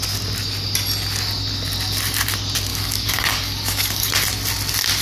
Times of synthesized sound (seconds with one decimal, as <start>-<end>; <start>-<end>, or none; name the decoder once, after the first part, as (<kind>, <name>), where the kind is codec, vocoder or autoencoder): 2.7-4.1 (codec, DAC)